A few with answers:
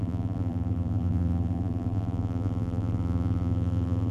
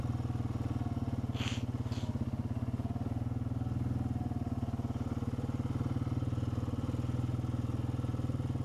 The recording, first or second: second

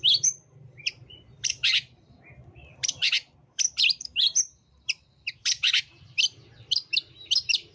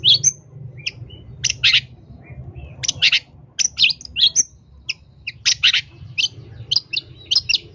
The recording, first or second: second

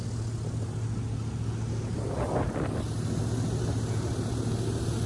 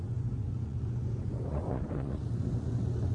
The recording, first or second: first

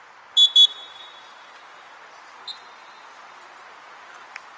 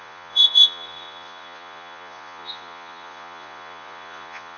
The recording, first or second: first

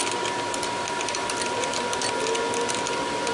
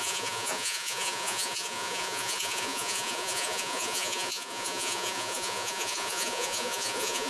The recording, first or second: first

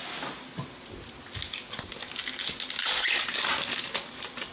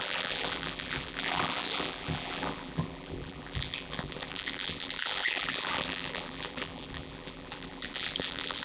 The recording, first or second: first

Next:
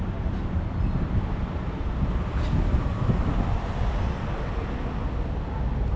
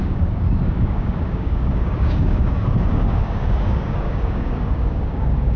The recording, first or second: first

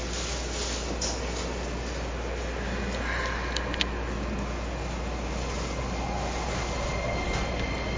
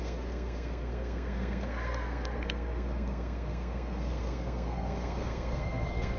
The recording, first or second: first